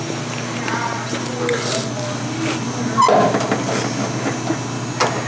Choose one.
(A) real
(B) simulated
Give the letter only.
A